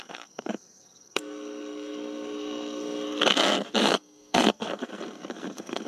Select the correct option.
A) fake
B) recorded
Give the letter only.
A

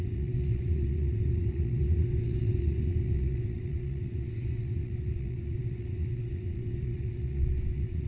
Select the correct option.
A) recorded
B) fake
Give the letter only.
B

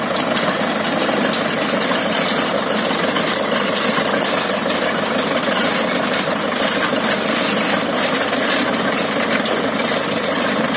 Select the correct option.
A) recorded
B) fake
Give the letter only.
A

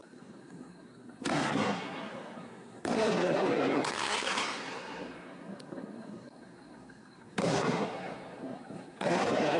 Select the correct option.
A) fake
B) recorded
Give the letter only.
A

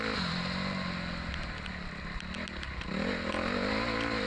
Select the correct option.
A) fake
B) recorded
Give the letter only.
B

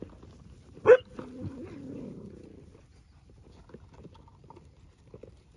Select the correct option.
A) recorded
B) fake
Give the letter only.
A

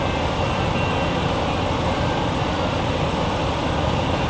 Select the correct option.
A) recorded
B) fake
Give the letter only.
A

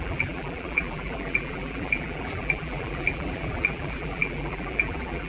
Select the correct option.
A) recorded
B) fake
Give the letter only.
B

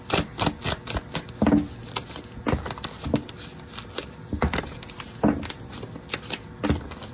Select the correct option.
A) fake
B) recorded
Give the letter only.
B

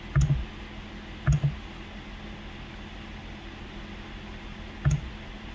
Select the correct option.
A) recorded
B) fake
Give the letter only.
A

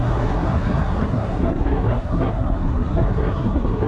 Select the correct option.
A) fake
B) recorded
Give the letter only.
A